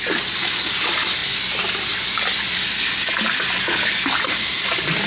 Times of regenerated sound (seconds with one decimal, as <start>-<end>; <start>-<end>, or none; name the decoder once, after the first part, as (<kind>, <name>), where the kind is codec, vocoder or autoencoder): none